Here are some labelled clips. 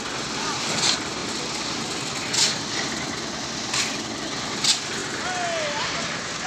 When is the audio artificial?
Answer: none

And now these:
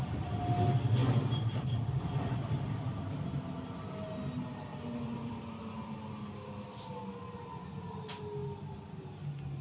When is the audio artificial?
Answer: 1.0-2.4 (vocoder, BigVGAN v2); 4.7-5.5